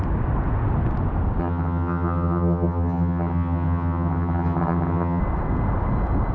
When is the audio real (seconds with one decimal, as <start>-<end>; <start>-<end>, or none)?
0.0-1.4; 5.2-6.3